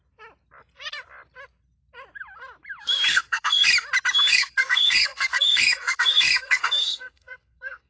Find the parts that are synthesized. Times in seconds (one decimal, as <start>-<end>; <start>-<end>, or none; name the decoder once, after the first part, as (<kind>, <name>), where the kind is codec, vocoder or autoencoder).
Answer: 3.1-3.7 (codec, SNAC); 4.3-7.9